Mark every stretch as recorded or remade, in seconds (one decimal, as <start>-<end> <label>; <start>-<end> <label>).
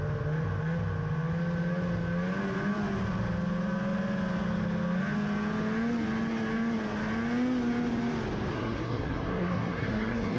0.0-8.5 recorded; 8.5-10.4 remade